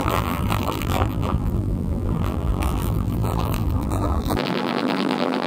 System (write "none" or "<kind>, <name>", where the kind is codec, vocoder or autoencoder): vocoder, BigVGAN v2